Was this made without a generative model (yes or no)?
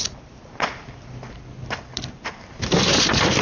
no